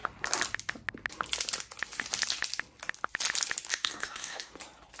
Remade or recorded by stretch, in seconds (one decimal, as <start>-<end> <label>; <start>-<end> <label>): 0.0-3.7 recorded; 3.7-4.5 remade; 4.5-5.0 recorded